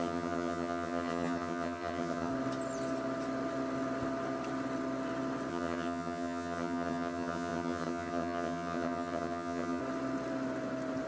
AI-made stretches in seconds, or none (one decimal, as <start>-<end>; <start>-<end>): 0.0-2.3; 5.5-9.8